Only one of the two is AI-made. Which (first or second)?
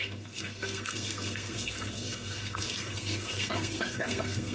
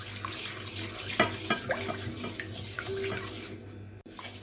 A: first